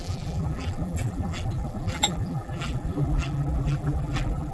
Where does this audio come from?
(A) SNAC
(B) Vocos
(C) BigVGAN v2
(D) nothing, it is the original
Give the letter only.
C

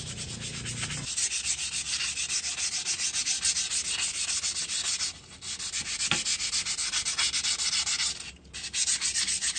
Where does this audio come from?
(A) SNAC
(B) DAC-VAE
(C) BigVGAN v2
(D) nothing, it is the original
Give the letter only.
D